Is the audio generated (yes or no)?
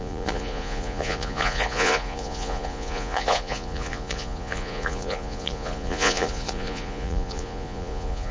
yes